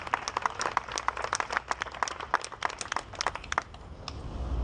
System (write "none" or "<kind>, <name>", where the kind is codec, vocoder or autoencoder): none